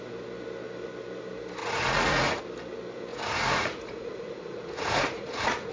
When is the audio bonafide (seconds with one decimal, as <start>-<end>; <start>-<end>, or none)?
0.0-1.6; 2.4-3.1